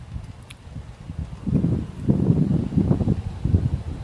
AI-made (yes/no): no